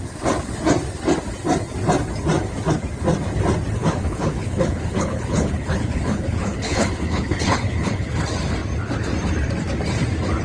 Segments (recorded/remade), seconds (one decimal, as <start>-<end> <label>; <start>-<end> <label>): 0.0-3.8 recorded; 3.8-8.1 remade; 8.1-10.4 recorded